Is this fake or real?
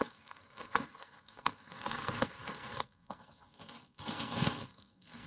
fake